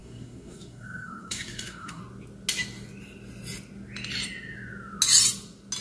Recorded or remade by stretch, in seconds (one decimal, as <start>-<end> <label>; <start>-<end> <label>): 0.0-2.0 remade; 2.0-5.8 recorded